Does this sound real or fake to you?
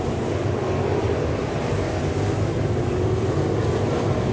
real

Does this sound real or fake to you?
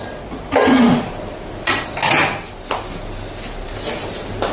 real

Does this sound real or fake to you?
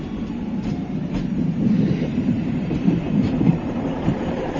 fake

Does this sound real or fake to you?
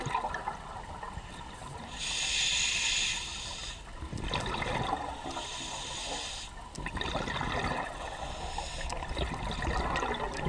real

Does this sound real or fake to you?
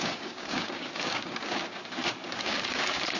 fake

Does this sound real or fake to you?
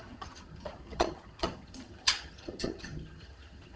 fake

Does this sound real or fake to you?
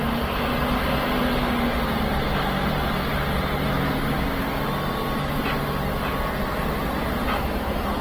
real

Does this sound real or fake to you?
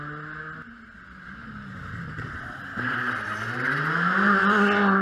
real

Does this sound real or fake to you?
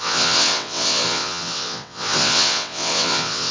fake